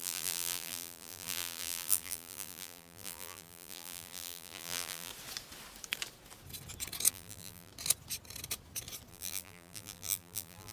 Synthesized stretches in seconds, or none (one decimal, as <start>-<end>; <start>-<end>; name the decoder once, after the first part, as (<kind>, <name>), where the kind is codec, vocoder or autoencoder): 0.0-5.1 (vocoder, BigVGAN v2); 7.1-7.7; 9.1-10.7